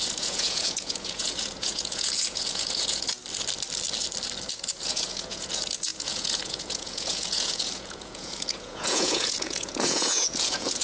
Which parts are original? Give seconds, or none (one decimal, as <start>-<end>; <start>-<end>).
3.2-4.5

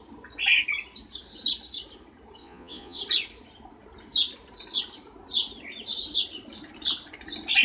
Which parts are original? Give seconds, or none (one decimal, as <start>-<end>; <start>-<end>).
0.0-2.4; 3.0-7.6

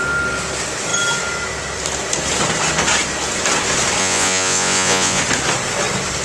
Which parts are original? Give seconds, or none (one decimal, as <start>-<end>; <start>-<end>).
0.0-4.0; 5.2-6.2